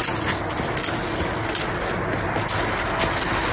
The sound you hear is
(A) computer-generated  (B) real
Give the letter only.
B